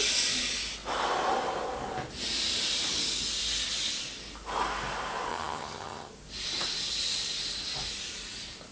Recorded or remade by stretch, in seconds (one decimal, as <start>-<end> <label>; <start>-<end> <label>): 0.0-5.3 recorded; 5.3-6.1 remade; 6.1-8.7 recorded